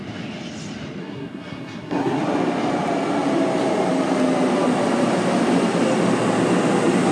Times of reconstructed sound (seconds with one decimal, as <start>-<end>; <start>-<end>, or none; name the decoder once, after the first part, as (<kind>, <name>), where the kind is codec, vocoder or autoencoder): 1.0-2.2 (codec, SNAC)